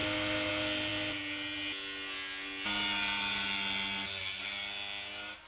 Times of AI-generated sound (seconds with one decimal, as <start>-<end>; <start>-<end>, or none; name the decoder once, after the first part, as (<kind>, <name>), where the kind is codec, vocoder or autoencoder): none